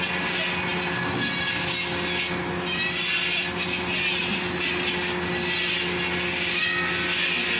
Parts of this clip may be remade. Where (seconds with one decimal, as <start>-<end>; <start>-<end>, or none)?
none